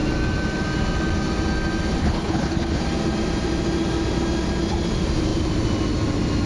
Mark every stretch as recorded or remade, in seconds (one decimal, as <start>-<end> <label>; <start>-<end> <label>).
0.0-2.0 recorded; 2.0-2.8 remade; 2.8-6.5 recorded